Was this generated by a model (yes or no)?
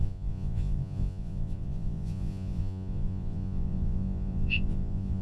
yes